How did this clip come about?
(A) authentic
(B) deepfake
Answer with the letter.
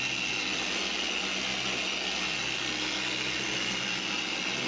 A